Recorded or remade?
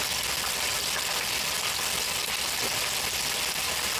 recorded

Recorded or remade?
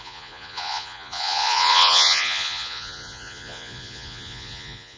remade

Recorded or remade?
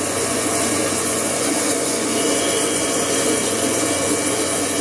remade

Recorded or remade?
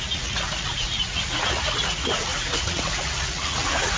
remade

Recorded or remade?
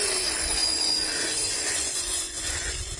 remade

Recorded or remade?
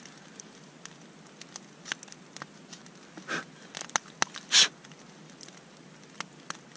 recorded